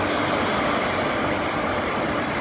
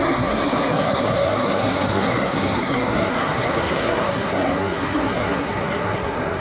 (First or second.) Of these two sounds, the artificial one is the second